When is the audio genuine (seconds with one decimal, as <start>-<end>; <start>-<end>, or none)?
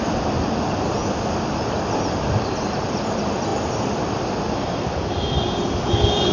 0.0-6.3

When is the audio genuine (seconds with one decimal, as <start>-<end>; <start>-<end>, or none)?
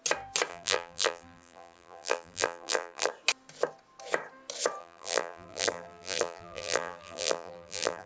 0.0-0.5; 3.1-4.8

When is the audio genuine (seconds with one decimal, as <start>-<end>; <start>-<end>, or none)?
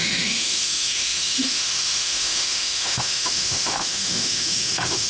none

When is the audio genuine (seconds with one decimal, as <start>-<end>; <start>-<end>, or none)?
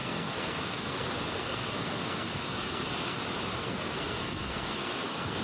3.2-3.6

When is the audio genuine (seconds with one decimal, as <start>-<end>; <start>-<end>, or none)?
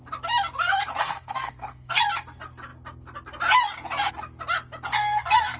0.0-1.0; 2.0-4.9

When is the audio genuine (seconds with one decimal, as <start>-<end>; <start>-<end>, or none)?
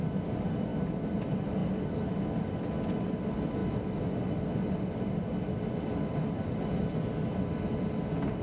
0.0-8.4